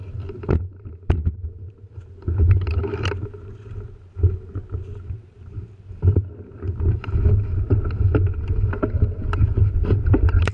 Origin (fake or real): real